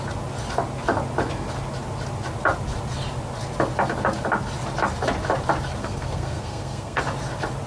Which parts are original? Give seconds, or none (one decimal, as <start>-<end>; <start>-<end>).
0.0-5.8; 7.0-7.7